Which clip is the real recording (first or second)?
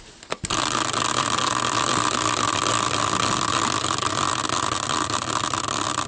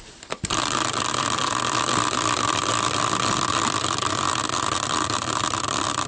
first